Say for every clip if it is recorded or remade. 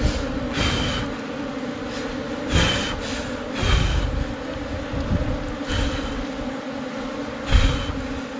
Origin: recorded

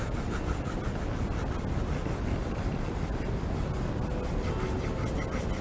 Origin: recorded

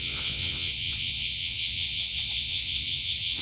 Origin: remade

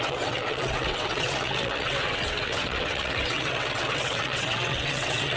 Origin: remade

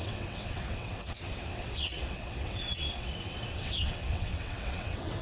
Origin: remade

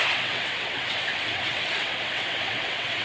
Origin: remade